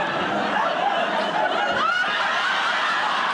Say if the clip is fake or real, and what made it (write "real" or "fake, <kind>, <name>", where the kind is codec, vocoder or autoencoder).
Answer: real